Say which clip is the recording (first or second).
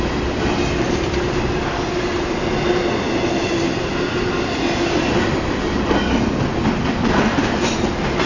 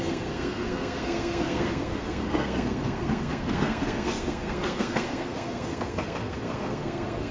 first